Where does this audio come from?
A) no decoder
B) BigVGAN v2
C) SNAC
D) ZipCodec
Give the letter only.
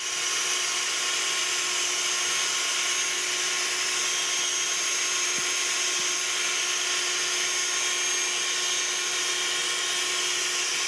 A